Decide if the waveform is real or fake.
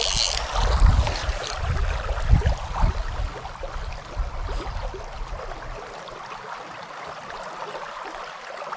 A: real